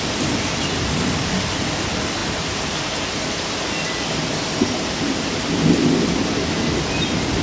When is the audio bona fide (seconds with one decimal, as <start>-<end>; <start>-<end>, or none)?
0.0-7.4